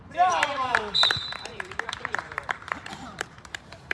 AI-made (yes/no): yes